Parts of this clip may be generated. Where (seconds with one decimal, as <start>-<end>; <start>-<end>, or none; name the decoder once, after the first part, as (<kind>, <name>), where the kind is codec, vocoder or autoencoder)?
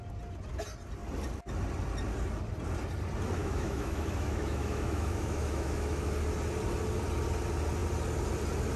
3.4-6.1 (autoencoder, DAC-VAE)